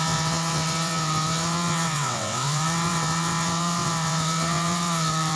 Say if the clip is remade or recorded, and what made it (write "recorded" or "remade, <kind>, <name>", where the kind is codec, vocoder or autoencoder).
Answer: remade, vocoder, WaveNeXt